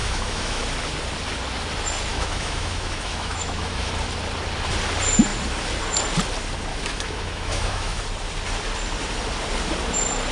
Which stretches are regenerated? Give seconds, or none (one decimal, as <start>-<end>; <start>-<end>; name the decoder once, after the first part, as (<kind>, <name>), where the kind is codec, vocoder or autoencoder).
0.0-0.6 (autoencoder, DAC-VAE); 2.1-3.9; 6.7-8.0